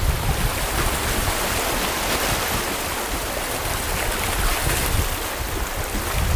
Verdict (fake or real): real